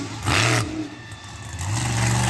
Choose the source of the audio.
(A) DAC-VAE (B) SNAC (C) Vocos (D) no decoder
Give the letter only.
D